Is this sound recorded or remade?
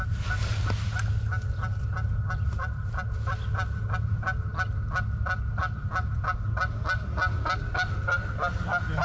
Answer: recorded